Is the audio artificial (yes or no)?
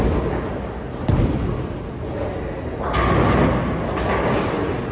no